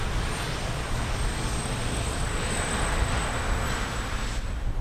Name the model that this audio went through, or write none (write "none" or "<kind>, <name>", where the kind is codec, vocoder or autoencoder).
none